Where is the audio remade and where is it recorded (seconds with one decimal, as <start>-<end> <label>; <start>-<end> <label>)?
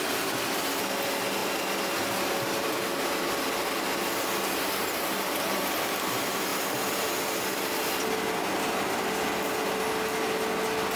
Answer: 0.0-11.0 recorded